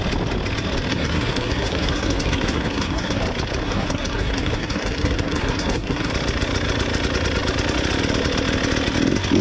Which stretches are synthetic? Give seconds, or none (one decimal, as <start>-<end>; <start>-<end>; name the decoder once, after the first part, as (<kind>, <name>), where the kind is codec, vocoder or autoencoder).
0.9-3.2 (codec, SNAC); 3.6-6.1